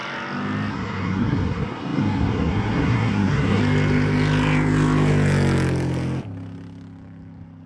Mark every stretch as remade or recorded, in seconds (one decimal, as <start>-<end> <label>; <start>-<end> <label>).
0.0-0.7 recorded; 0.7-3.6 remade; 3.6-7.7 recorded